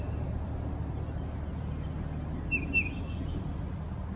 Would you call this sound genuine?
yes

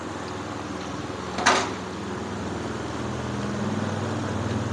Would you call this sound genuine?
yes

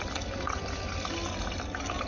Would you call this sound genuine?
yes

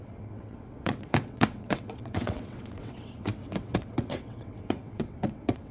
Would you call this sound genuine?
no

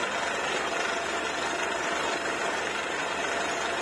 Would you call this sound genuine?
yes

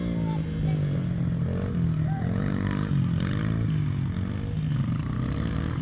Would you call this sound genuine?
yes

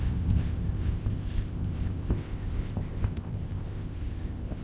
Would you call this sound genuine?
no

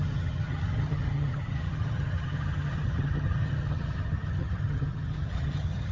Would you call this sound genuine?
no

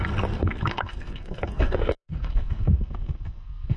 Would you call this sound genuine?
no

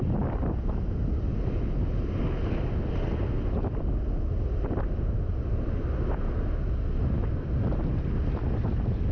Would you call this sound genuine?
yes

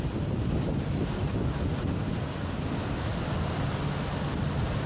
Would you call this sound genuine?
yes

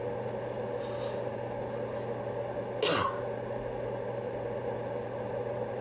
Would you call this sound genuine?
yes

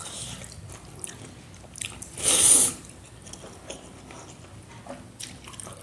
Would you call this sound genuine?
yes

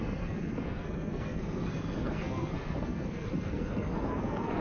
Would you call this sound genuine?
no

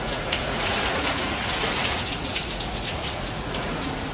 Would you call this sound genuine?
no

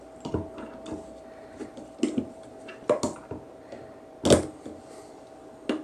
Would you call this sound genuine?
yes